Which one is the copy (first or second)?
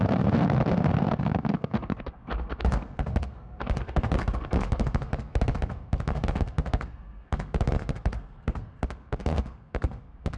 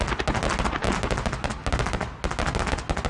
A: first